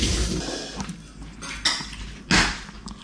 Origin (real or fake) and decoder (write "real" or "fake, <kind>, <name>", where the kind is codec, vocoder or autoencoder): real